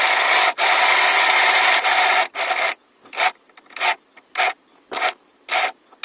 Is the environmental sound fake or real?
real